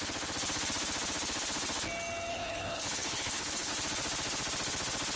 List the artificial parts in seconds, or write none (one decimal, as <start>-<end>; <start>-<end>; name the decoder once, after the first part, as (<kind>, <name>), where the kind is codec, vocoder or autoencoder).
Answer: 2.3-3.7 (codec, HILCodec)